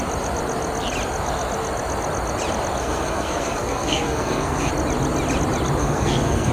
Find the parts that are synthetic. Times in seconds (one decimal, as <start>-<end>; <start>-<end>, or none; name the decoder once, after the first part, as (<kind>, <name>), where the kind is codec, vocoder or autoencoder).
2.8-4.7 (codec, SNAC); 5.8-6.5